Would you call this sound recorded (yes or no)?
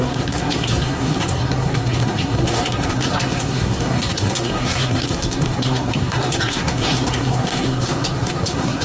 no